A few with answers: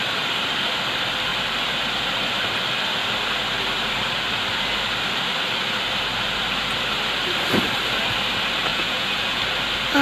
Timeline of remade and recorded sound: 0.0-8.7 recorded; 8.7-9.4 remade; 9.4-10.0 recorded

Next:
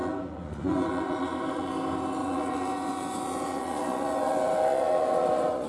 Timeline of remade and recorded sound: 0.0-1.7 remade; 1.7-2.2 recorded; 2.2-5.7 remade

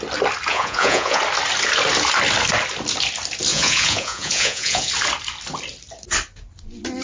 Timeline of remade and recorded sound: 0.0-0.5 recorded; 0.5-1.2 remade; 1.2-3.5 recorded; 3.5-4.9 remade; 4.9-7.0 recorded

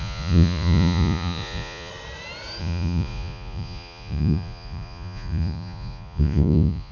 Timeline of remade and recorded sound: 0.0-1.9 remade; 1.9-2.6 recorded; 2.6-6.9 remade

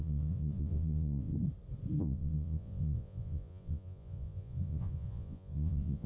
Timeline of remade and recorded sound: 0.0-1.3 remade; 1.3-2.0 recorded; 2.0-6.1 remade

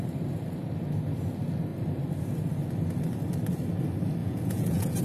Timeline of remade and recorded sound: 0.0-4.2 recorded; 4.2-5.0 remade